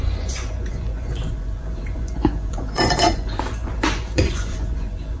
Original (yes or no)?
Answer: no